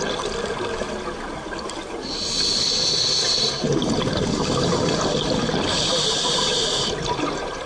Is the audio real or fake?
real